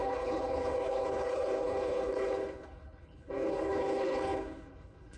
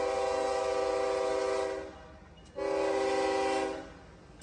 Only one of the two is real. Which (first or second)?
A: second